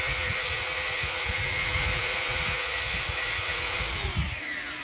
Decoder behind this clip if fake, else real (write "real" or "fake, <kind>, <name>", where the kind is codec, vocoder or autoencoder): fake, vocoder, Vocos